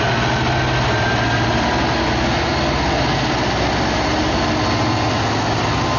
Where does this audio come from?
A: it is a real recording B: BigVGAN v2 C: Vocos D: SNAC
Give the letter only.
A